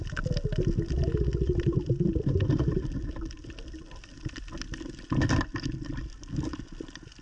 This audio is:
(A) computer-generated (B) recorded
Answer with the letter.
B